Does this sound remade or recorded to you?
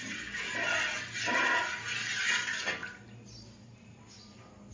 recorded